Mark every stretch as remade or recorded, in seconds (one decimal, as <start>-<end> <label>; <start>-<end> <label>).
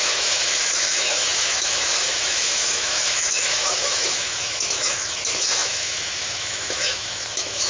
0.0-7.7 remade